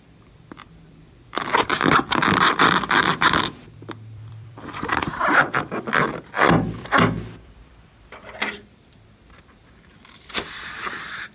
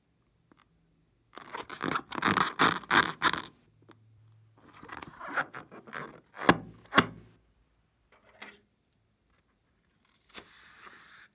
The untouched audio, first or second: second